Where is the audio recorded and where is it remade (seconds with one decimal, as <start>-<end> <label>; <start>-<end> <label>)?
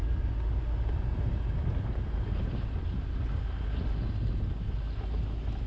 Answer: 0.0-5.7 recorded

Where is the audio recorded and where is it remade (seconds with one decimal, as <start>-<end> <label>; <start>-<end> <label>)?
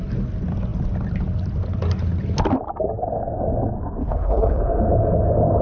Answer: 0.0-4.0 recorded; 4.0-4.6 remade; 4.6-5.6 recorded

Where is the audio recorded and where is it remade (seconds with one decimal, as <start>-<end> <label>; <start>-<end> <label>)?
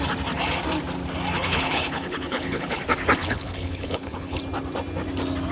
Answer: 0.0-1.4 recorded; 1.4-2.8 remade; 2.8-3.2 recorded; 3.2-4.4 remade; 4.4-5.5 recorded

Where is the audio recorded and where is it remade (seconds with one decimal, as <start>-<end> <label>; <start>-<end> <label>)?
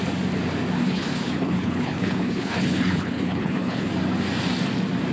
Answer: 0.0-0.8 recorded; 0.8-3.9 remade; 3.9-5.1 recorded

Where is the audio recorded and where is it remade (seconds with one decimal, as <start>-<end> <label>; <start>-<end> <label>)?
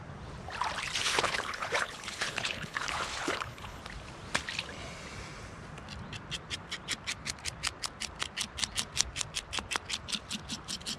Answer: 0.0-1.0 recorded; 1.0-3.8 remade; 3.8-11.0 recorded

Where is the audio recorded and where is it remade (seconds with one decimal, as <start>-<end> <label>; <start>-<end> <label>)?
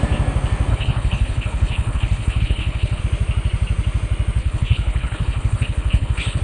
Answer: 0.0-0.7 recorded; 0.7-3.0 remade; 3.0-4.4 recorded; 4.4-6.4 remade